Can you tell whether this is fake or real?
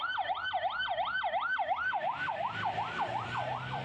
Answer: fake